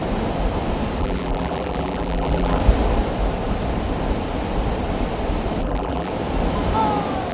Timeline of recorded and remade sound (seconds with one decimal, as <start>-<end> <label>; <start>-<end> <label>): 0.0-1.0 recorded; 1.0-2.6 remade; 2.6-5.6 recorded; 5.6-6.1 remade; 6.1-7.3 recorded